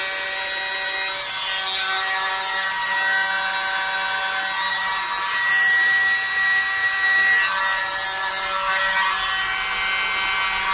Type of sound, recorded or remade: recorded